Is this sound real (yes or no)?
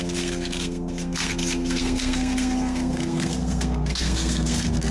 no